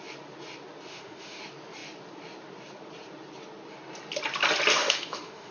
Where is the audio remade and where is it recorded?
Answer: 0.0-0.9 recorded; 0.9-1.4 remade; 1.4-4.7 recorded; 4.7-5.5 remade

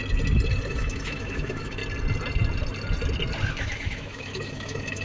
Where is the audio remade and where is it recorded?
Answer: 0.0-0.7 recorded; 0.7-1.8 remade; 1.8-3.5 recorded; 3.5-5.0 remade

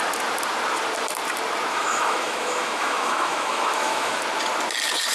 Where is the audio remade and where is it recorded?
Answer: 0.0-1.7 recorded; 1.7-4.2 remade; 4.2-5.1 recorded